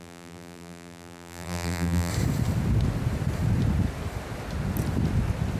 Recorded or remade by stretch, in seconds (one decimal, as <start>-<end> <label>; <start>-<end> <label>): 0.0-2.1 remade; 2.1-5.6 recorded